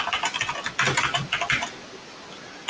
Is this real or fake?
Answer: real